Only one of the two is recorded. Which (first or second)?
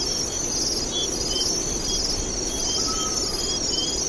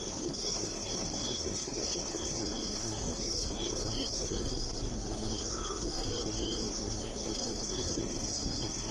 first